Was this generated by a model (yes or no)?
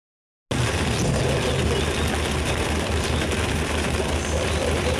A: no